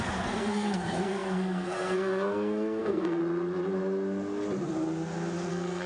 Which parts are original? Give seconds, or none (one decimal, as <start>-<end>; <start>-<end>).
3.2-5.5